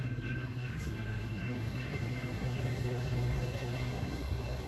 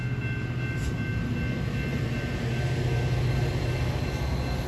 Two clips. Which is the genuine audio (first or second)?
second